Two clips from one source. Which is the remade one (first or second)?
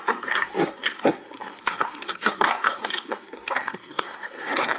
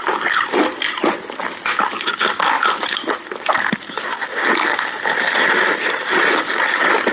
first